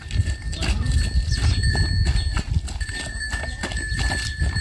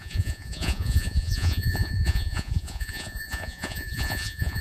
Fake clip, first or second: second